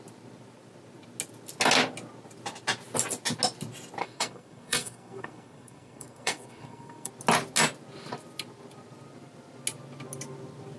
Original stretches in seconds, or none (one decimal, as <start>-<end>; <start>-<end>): 0.0-4.0; 7.1-10.8